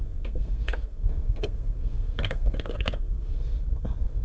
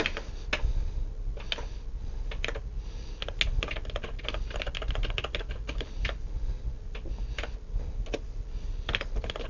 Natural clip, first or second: second